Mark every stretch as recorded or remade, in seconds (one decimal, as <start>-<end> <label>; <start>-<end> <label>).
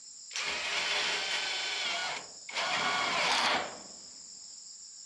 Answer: 0.0-5.1 recorded